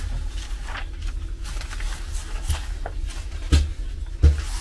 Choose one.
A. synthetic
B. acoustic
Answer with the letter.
B